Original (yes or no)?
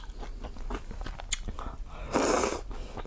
yes